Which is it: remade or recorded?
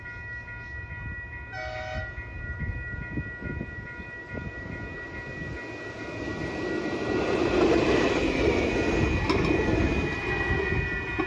recorded